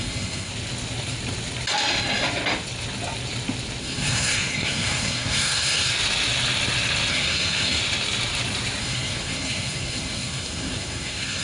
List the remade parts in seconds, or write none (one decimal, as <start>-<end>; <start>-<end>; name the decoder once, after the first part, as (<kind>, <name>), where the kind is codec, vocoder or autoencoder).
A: 0.0-0.5 (codec, SNAC); 3.8-5.9; 7.1-7.8; 8.8-11.4